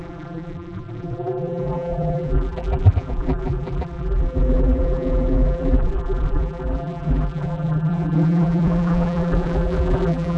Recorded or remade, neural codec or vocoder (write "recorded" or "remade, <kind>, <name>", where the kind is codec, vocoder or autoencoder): remade, vocoder, BigVGAN v2